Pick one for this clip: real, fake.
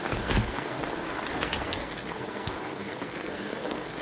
fake